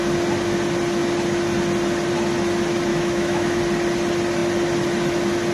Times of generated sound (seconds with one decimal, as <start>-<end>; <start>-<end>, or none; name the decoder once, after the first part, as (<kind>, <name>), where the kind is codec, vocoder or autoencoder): 2.9-3.6 (autoencoder, DAC-VAE)